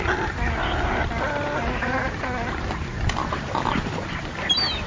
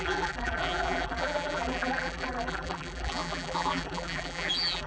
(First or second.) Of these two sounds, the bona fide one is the first